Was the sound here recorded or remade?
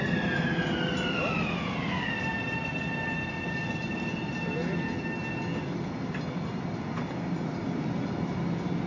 recorded